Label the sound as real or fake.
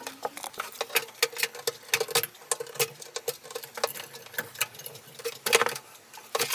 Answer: real